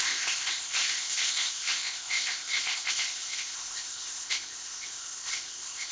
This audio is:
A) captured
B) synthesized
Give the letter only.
B